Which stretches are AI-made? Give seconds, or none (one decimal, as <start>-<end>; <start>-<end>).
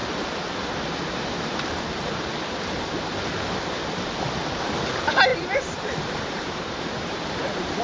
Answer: 5.3-7.8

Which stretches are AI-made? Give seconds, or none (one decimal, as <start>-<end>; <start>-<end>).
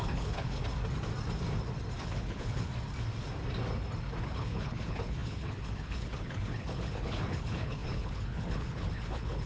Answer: 0.0-0.6; 2.0-2.7; 4.2-9.5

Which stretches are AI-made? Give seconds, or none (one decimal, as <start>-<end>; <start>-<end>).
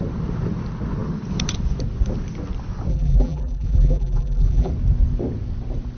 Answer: 2.9-4.7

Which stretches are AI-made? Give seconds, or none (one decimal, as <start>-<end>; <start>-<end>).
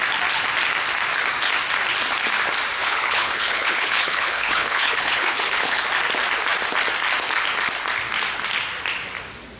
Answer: 2.8-5.8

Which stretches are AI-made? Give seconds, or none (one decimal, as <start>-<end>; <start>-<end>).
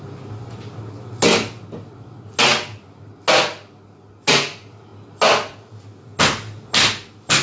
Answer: none